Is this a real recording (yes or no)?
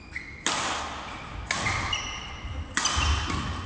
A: yes